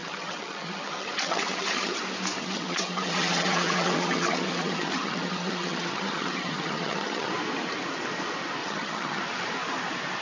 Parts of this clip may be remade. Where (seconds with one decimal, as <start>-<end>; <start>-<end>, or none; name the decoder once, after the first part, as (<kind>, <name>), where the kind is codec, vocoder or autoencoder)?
0.0-2.0 (vocoder, HiFi-GAN); 2.4-7.3; 8.6-9.2